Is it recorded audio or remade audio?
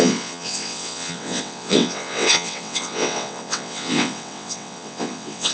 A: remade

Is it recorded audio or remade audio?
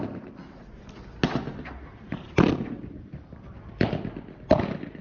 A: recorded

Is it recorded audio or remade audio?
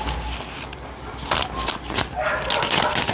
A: recorded